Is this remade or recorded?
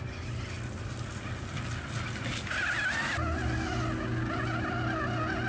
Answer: recorded